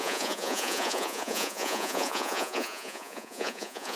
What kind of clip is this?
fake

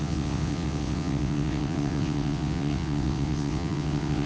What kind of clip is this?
fake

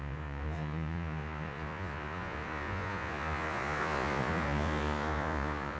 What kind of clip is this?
fake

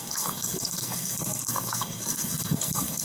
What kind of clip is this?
fake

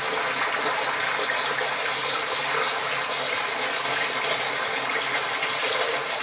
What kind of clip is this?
real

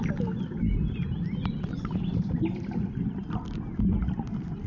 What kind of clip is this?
real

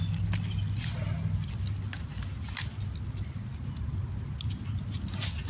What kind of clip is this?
real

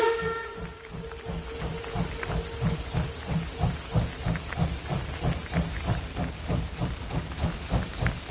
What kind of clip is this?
real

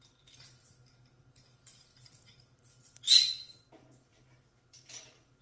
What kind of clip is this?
real